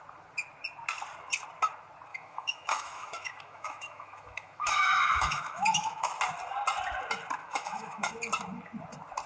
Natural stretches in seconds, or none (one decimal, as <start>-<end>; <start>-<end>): 0.0-2.1; 6.2-7.4; 8.1-9.3